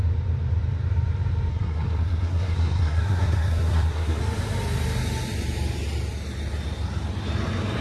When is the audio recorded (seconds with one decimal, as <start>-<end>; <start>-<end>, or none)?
0.0-1.5; 4.2-7.8